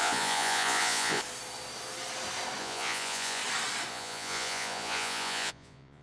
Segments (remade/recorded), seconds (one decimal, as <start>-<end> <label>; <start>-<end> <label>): 0.0-1.2 remade; 1.2-2.6 recorded; 2.6-3.4 remade; 3.4-3.9 recorded; 3.9-6.0 remade